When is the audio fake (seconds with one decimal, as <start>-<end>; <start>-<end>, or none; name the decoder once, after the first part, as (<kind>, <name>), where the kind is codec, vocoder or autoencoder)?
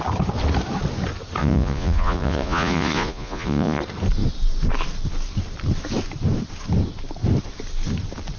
1.4-3.8 (vocoder, Vocos)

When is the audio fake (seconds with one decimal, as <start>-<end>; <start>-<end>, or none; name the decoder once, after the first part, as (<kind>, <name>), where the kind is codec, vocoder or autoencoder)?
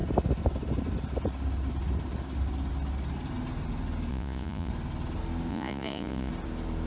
4.1-4.7 (vocoder, Vocos); 5.5-6.3